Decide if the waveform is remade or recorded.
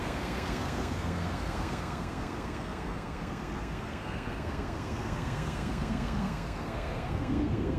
remade